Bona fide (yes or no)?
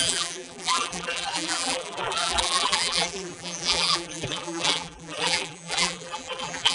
no